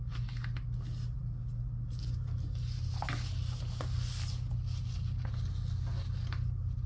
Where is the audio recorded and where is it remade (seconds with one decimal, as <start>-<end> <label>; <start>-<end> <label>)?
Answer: 0.0-6.9 recorded

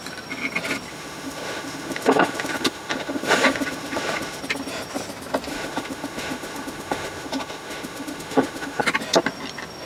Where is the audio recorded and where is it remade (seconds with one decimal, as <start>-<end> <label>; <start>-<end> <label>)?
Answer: 0.0-0.9 recorded; 0.9-4.4 remade; 4.4-5.5 recorded; 5.5-8.8 remade; 8.8-9.9 recorded

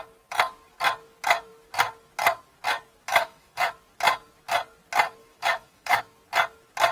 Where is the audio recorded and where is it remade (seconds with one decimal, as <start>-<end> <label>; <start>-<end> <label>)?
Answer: 0.0-3.1 recorded; 3.1-3.7 remade; 3.7-5.2 recorded; 5.2-6.0 remade; 6.0-6.9 recorded

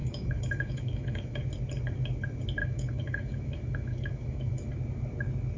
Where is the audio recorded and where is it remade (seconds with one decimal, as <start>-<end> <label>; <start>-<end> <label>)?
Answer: 0.0-1.4 remade; 1.4-2.6 recorded; 2.6-4.7 remade; 4.7-5.6 recorded

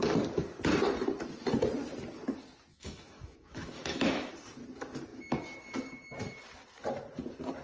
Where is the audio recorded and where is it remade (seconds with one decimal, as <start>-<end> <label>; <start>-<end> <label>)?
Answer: 0.0-2.7 recorded; 2.7-4.3 remade; 4.3-7.6 recorded

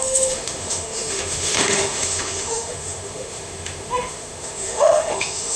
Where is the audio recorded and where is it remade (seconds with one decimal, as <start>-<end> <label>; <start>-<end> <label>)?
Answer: 0.0-5.6 remade

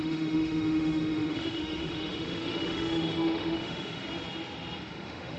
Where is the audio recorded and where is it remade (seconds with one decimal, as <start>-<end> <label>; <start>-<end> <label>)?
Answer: 0.0-4.0 remade; 4.0-4.9 recorded; 4.9-5.4 remade